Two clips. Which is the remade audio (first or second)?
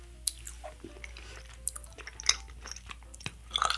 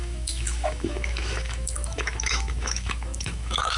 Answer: second